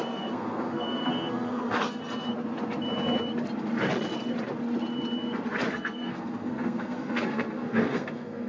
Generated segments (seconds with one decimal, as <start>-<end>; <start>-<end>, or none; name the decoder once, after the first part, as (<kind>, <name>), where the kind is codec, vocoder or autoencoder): 0.0-2.0 (codec, SNAC); 5.7-8.5